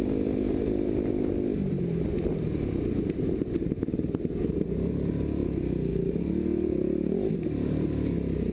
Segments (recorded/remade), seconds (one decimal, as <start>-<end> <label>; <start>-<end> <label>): 0.0-8.5 recorded

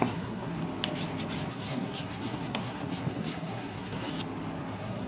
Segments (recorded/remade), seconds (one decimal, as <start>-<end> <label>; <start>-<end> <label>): 0.0-0.6 remade; 0.6-1.5 recorded; 1.5-4.1 remade; 4.1-4.6 recorded; 4.6-5.1 remade

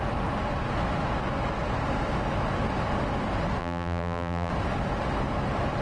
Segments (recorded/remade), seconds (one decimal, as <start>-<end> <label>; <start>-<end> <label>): 0.0-3.6 recorded; 3.6-4.5 remade; 4.5-5.8 recorded

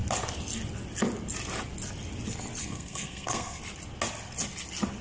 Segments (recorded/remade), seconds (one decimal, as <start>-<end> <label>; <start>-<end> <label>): 0.0-2.6 recorded; 2.6-3.6 remade; 3.6-5.0 recorded

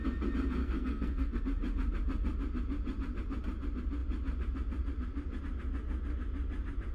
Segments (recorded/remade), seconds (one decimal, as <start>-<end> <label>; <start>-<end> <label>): 0.0-0.6 recorded; 0.6-1.4 remade; 1.4-6.9 recorded

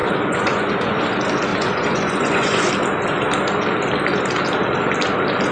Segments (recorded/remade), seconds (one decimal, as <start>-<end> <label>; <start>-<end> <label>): 0.0-1.0 remade; 1.0-1.5 recorded; 1.5-2.7 remade; 2.7-5.5 recorded